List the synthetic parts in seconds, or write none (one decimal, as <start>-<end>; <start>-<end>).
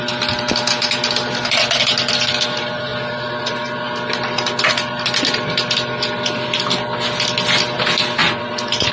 8.2-8.9